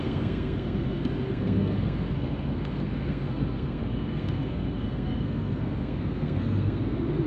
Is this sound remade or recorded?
remade